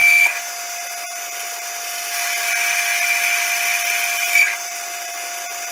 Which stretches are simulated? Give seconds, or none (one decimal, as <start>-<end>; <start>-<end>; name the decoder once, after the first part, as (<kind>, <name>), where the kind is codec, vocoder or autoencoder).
none

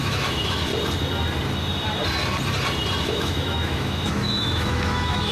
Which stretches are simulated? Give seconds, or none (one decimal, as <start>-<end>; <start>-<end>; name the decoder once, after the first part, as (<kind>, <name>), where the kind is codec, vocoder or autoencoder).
0.0-0.7 (autoencoder, DAC-VAE); 3.0-5.3

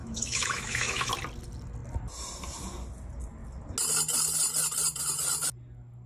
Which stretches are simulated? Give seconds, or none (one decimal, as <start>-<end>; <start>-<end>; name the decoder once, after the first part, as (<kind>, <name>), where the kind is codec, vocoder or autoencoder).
0.0-1.1 (autoencoder, DAC-VAE)

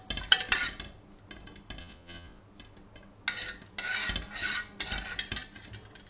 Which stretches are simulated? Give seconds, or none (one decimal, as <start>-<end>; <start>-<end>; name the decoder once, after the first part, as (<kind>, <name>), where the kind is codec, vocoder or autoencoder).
1.8-2.4 (vocoder, Vocos)

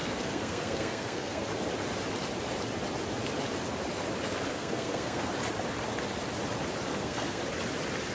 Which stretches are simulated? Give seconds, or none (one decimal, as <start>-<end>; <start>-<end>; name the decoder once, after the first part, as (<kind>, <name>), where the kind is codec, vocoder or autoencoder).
0.0-1.5 (codec, SNAC); 4.5-5.3; 6.9-7.4

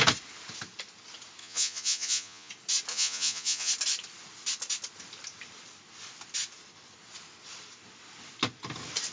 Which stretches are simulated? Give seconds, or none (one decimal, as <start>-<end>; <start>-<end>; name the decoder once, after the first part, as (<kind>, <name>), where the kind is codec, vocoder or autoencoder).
1.4-2.5 (vocoder, Vocos); 2.9-3.7